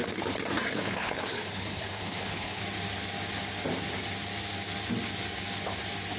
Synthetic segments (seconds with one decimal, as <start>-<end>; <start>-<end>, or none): 0.7-2.6